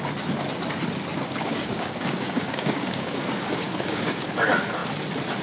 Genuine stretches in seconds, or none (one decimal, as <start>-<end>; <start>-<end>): 0.0-1.1; 4.3-5.4